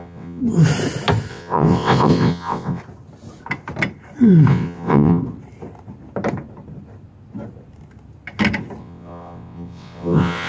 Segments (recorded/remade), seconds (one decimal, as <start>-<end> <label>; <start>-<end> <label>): 0.0-0.4 remade; 0.4-1.3 recorded; 1.3-2.8 remade; 2.8-4.5 recorded; 4.5-5.2 remade; 5.2-8.8 recorded; 8.8-10.5 remade